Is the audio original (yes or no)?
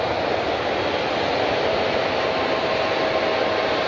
yes